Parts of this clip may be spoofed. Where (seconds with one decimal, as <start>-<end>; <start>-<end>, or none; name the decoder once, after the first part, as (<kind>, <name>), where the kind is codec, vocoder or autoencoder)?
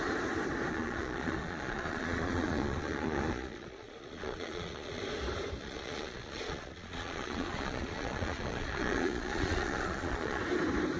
0.7-5.0 (vocoder, Vocos); 5.6-10.4